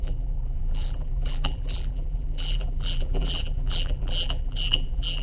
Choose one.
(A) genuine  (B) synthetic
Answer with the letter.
B